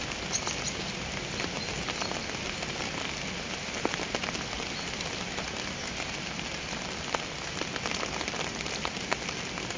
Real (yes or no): yes